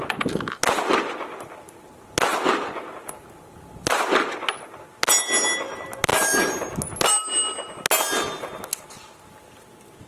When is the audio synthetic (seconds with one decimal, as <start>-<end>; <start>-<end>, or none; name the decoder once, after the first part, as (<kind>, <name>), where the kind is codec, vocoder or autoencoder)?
2.3-4.0 (vocoder, BigVGAN v2); 6.1-6.6